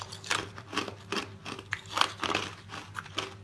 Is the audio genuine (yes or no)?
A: yes